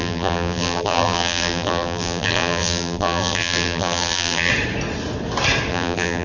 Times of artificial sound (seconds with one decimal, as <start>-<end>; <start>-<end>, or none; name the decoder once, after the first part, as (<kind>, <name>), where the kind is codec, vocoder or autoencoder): 0.0-4.5 (vocoder, BigVGAN v2); 5.7-6.2